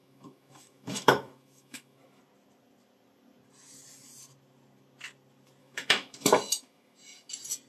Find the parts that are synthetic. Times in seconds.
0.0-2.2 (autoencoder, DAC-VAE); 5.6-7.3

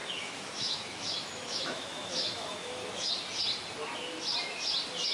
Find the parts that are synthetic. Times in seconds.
0.0-3.1 (autoencoder, DAC-VAE)